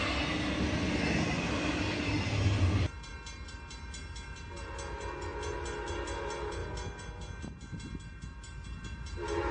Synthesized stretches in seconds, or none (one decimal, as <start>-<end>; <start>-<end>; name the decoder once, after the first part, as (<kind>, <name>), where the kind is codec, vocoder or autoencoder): none